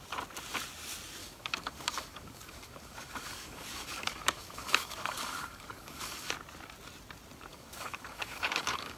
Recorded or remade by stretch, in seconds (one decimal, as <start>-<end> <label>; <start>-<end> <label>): 0.0-1.2 recorded; 1.2-6.3 remade; 6.3-7.5 recorded; 7.5-9.0 remade